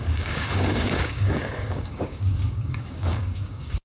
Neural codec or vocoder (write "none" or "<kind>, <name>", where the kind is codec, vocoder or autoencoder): codec, DAC